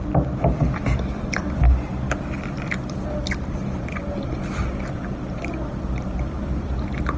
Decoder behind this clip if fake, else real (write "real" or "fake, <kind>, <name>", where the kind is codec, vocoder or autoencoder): fake, vocoder, BigVGAN v2